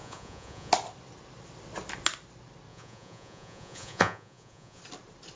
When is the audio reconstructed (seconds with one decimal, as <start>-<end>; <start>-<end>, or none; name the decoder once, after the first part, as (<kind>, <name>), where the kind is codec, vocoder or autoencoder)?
0.0-0.7 (vocoder, Vocos); 2.7-4.8